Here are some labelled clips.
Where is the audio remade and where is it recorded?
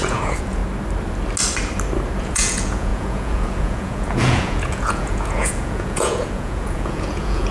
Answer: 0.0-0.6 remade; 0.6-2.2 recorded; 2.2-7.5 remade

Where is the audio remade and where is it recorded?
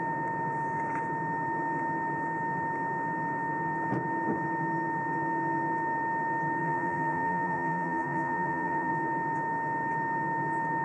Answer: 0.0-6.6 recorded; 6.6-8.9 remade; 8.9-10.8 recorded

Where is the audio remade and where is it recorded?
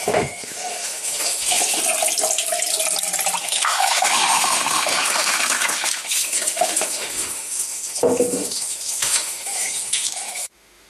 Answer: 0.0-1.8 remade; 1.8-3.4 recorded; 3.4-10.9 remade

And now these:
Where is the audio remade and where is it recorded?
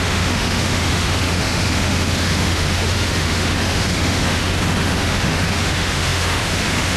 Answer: 0.0-7.0 remade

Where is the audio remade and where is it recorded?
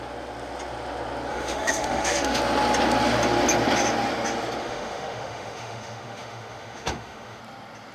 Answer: 0.0-1.3 recorded; 1.3-2.4 remade; 2.4-4.6 recorded; 4.6-7.4 remade; 7.4-7.9 recorded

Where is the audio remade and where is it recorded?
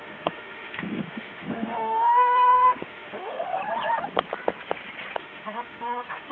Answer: 0.0-3.6 remade; 3.6-5.2 recorded; 5.2-6.3 remade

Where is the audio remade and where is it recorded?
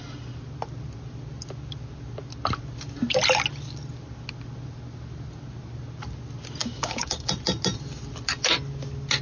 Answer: 0.0-6.6 recorded; 6.6-7.3 remade; 7.3-9.2 recorded